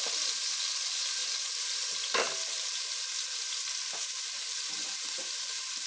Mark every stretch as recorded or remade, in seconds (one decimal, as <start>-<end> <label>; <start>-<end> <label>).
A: 0.0-5.9 recorded